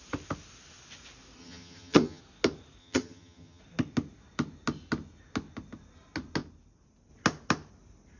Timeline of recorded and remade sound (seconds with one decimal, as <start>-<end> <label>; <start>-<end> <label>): 0.0-1.4 recorded; 1.4-2.2 remade; 2.2-2.8 recorded; 2.8-3.6 remade; 3.6-8.2 recorded